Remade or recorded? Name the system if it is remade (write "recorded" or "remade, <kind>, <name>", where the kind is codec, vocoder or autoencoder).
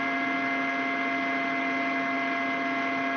recorded